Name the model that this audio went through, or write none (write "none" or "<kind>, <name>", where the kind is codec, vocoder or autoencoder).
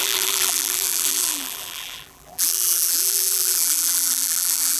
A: vocoder, BigVGAN v2